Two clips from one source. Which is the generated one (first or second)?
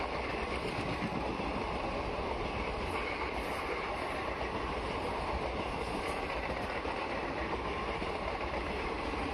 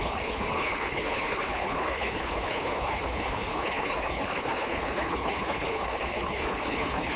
second